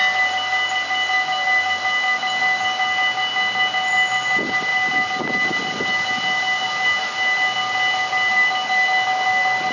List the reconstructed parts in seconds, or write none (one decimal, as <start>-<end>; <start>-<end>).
none